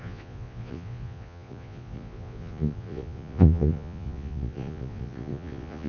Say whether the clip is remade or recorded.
remade